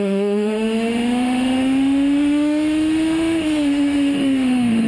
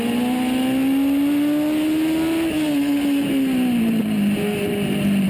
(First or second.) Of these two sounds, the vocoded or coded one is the first